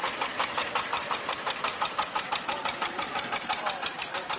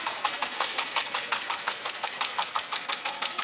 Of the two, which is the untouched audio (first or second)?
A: first